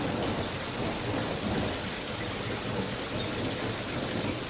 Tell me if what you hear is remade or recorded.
recorded